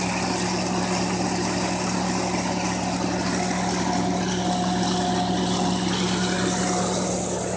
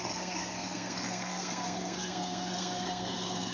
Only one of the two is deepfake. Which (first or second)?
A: second